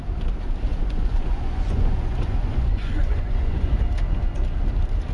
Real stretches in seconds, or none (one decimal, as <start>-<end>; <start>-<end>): 0.0-0.7; 3.8-5.1